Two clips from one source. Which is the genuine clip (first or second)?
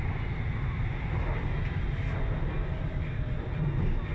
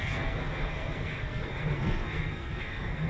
first